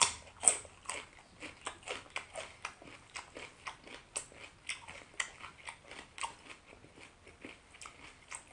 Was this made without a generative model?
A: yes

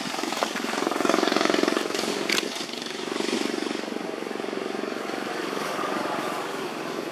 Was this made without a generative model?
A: no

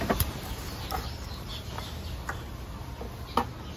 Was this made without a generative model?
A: yes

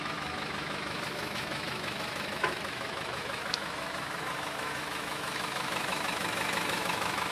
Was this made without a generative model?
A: no